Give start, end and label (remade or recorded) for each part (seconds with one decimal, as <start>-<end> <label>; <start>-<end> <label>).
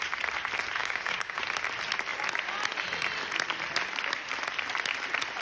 0.0-0.8 recorded; 0.8-1.4 remade; 1.4-5.4 recorded